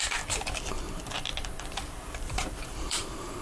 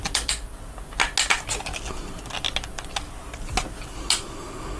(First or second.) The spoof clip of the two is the first